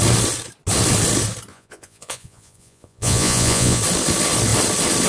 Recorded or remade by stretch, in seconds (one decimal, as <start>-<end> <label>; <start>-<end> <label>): 0.0-1.5 recorded; 1.5-3.8 remade; 3.8-5.1 recorded